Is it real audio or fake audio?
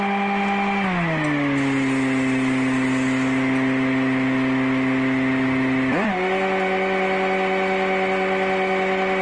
real